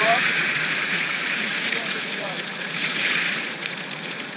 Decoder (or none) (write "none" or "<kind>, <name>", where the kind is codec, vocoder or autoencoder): vocoder, Vocos